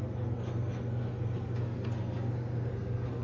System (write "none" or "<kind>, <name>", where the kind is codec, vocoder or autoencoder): codec, SNAC